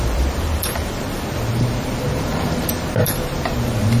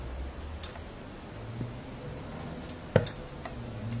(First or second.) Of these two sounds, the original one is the second